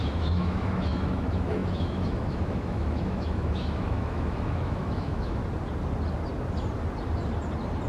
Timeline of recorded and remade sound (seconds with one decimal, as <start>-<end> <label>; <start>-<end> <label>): 0.0-5.4 remade; 5.4-7.9 recorded